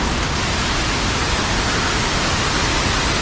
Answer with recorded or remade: recorded